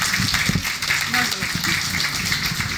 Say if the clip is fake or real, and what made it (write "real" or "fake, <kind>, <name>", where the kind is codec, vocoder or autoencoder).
real